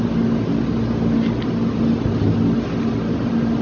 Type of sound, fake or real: real